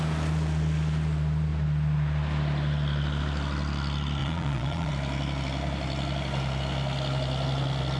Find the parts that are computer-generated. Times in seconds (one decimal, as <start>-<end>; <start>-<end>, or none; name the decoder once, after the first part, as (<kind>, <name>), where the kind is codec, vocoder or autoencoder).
4.2-4.9 (vocoder, Vocos)